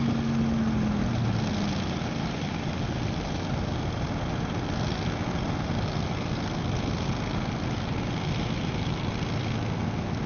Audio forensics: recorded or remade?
recorded